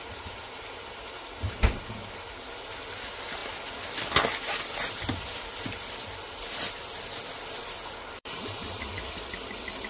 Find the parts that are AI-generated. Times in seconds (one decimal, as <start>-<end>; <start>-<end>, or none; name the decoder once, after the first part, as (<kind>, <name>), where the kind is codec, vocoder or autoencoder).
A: 7.6-8.9 (vocoder, BigVGAN v2)